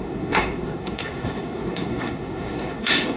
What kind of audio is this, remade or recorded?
remade